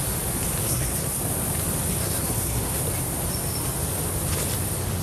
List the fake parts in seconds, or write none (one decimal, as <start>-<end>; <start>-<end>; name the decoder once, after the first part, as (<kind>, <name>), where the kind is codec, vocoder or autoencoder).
0.6-1.2 (codec, SNAC); 1.9-2.8